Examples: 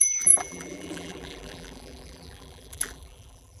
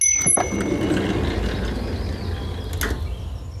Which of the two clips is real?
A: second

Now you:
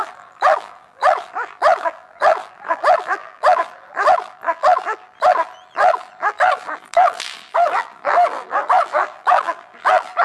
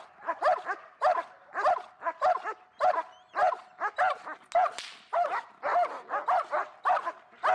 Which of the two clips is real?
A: second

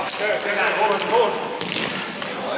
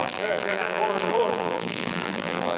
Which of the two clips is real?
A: first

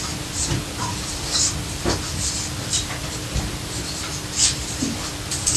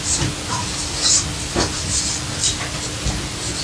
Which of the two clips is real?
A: second